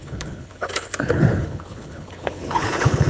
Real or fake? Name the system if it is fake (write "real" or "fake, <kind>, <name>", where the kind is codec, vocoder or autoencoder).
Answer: fake, codec, HILCodec